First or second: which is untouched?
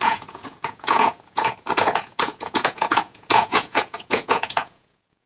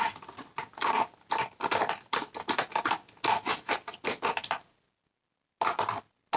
second